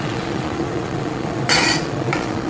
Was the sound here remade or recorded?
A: remade